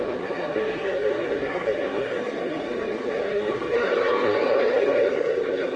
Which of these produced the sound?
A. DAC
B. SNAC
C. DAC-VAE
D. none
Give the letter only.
B